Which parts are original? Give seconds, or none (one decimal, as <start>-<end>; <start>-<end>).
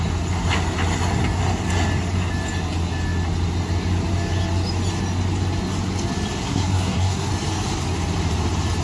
0.0-6.4; 7.3-8.8